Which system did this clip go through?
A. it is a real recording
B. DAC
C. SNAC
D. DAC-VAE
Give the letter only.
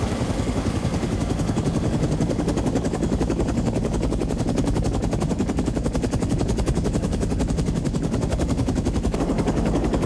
B